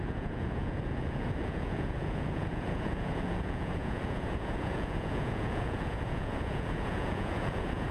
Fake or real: fake